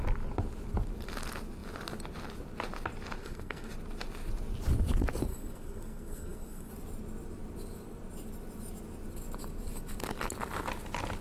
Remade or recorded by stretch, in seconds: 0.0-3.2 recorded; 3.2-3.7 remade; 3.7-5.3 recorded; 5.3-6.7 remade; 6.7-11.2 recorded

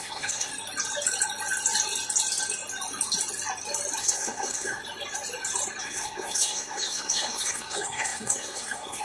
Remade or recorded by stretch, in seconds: 0.0-0.5 remade; 0.5-4.0 recorded; 4.0-4.8 remade; 4.8-5.8 recorded; 5.8-9.0 remade